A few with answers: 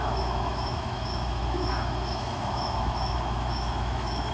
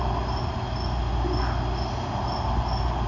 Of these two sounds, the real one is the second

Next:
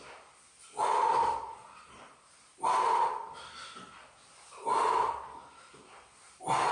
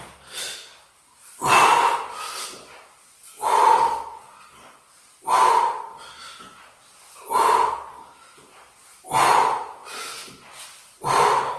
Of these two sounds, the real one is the second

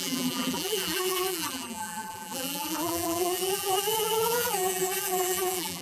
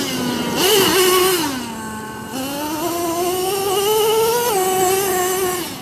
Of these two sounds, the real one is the second